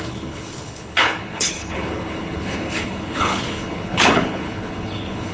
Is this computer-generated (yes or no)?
yes